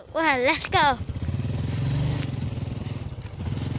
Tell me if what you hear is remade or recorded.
recorded